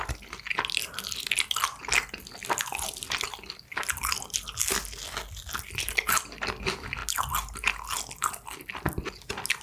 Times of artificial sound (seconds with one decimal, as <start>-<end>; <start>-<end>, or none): none